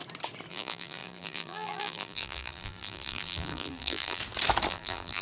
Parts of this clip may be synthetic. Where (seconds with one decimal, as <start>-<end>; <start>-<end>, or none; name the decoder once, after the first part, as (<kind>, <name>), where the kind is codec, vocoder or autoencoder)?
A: 0.5-4.2 (vocoder, BigVGAN v2); 4.7-5.2